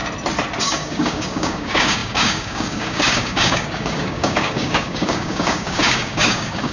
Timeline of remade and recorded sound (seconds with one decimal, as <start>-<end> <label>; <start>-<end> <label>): 0.0-0.6 recorded; 0.6-6.7 remade